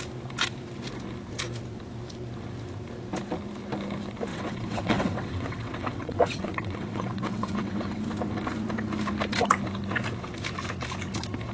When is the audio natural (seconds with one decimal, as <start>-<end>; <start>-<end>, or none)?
0.0-4.3; 8.0-11.5